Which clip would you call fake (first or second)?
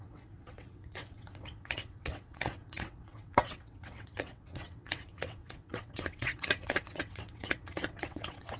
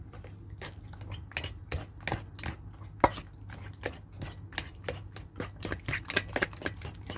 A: first